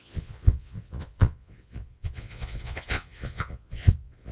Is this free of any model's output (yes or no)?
no